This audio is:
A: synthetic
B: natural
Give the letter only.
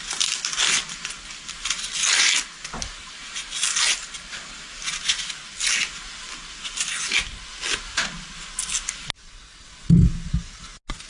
B